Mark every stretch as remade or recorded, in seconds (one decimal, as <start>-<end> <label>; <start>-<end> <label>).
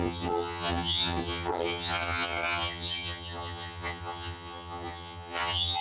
0.0-5.8 remade